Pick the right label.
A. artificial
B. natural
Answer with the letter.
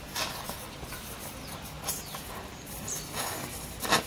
B